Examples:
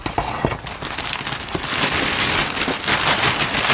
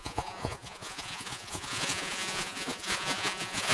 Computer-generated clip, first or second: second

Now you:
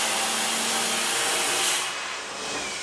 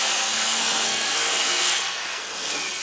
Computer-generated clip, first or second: second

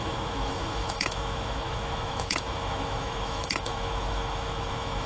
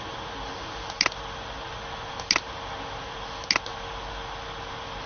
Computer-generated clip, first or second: first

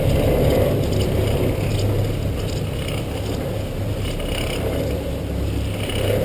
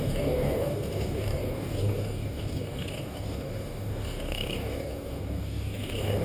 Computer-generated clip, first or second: second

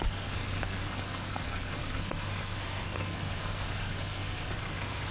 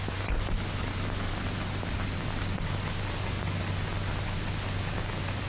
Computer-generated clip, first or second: first